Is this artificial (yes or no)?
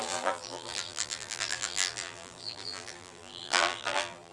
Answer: yes